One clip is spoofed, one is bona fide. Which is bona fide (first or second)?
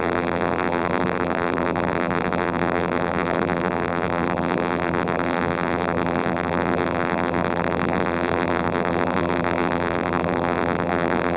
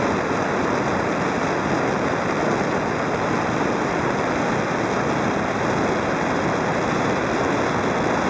second